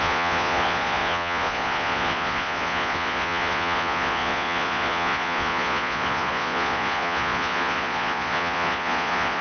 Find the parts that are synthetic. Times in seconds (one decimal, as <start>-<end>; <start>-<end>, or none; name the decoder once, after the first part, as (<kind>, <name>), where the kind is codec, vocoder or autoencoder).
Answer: 0.0-9.4 (vocoder, Vocos)